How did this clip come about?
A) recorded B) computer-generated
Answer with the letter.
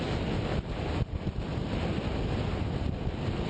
A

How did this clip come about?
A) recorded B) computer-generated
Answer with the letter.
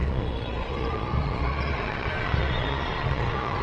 B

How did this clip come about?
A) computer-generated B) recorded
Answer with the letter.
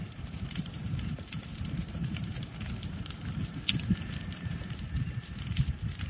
A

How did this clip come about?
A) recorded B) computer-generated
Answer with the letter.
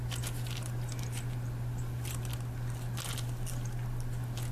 A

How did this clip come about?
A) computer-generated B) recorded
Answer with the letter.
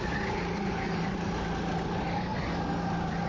B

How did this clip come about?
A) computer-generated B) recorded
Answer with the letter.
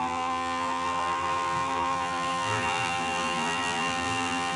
A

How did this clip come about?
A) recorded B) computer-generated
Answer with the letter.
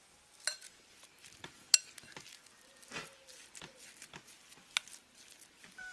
A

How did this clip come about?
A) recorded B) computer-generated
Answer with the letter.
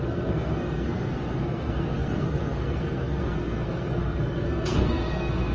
B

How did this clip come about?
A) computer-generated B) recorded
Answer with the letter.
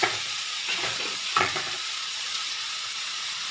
A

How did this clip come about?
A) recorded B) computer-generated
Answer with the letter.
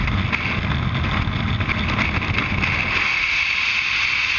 A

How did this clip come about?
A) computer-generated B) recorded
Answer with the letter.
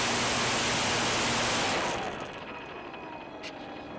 B